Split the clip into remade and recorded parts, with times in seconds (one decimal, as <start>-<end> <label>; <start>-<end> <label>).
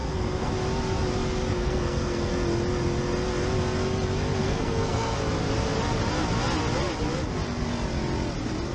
0.0-0.5 remade; 0.5-1.5 recorded; 1.5-2.3 remade; 2.3-4.4 recorded; 4.4-5.2 remade; 5.2-8.7 recorded